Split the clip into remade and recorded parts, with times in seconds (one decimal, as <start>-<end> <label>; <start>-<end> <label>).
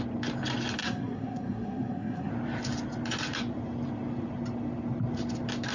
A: 0.0-0.8 recorded; 0.8-2.3 remade; 2.3-5.7 recorded